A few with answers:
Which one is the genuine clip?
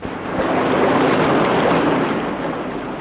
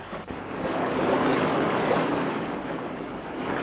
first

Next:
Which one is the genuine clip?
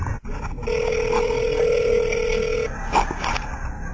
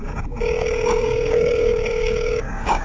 first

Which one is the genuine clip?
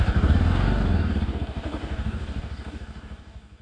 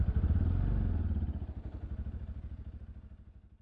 second